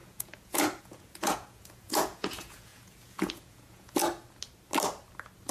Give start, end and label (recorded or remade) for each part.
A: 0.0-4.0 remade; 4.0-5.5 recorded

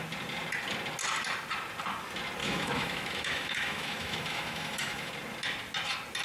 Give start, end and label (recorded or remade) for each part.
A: 0.0-2.4 recorded; 2.4-5.1 remade; 5.1-6.2 recorded

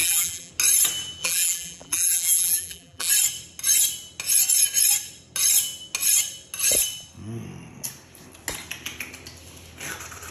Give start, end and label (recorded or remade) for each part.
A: 0.0-0.5 remade; 0.5-1.2 recorded; 1.2-3.1 remade; 3.1-10.3 recorded

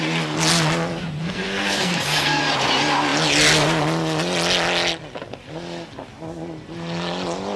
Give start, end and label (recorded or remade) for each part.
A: 0.0-1.2 recorded; 1.2-2.4 remade; 2.4-7.6 recorded

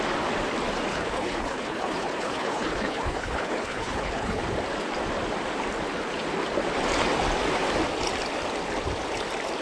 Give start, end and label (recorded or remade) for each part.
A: 0.0-0.9 recorded; 0.9-4.4 remade; 4.4-9.6 recorded